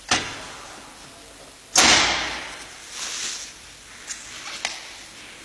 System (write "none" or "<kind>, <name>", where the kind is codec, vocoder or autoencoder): none